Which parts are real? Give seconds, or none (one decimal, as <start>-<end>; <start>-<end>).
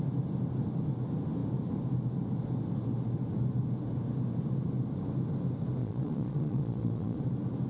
0.0-5.8; 7.2-7.7